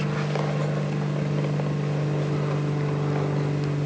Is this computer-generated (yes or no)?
no